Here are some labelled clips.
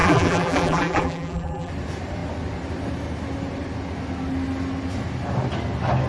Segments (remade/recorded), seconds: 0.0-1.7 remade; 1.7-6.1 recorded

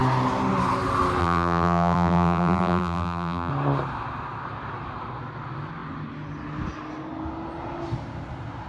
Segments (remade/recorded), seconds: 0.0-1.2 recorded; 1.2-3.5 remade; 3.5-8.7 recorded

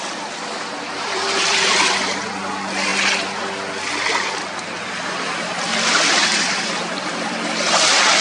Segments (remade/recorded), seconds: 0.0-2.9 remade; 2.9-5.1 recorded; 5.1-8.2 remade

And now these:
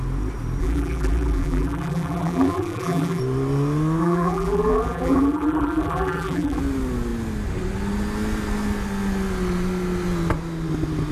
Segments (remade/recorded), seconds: 0.0-0.6 recorded; 0.6-3.2 remade; 3.2-4.0 recorded; 4.0-6.6 remade; 6.6-11.1 recorded

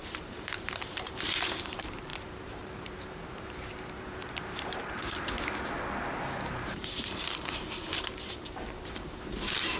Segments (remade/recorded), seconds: 0.0-5.0 remade; 5.0-6.2 recorded; 6.2-9.8 remade

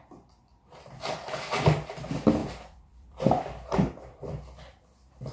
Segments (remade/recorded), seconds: 0.0-2.4 recorded; 2.4-4.2 remade; 4.2-5.3 recorded

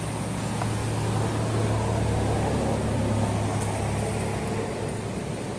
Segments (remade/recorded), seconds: 0.0-5.6 recorded